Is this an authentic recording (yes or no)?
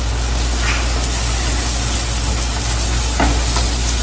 yes